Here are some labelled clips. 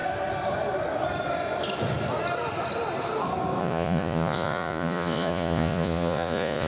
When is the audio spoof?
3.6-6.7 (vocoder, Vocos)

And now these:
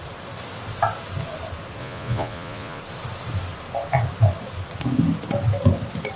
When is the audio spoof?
1.8-2.8 (vocoder, Vocos)